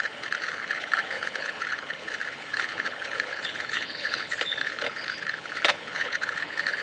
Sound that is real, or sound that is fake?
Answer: fake